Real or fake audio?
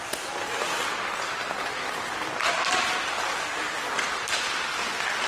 real